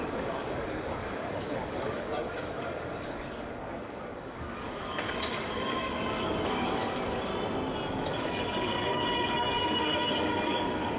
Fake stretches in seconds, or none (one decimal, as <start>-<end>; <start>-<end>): 0.0-7.3; 7.9-11.0